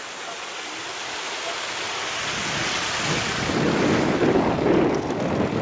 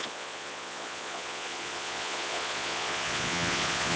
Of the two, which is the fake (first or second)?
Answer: second